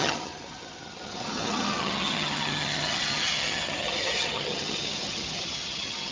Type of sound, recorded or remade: remade